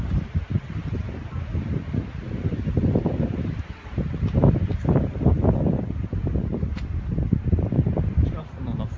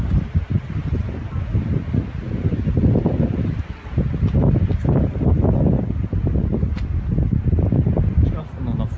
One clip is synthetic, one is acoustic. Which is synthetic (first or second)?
first